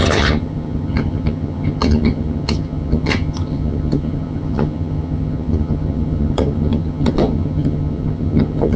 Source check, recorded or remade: remade